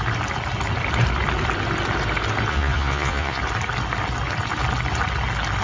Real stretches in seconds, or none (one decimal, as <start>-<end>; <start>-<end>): 0.0-2.5; 3.4-5.6